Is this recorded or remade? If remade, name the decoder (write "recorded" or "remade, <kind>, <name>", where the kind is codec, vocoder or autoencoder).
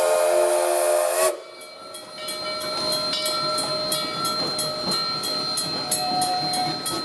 recorded